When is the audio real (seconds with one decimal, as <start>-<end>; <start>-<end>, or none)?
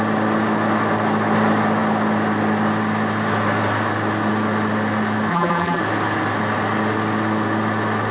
0.0-5.3; 5.8-8.1